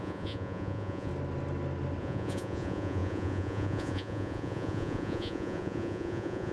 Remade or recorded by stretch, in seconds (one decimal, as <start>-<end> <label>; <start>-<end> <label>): 0.0-1.1 remade; 1.1-2.0 recorded; 2.0-6.5 remade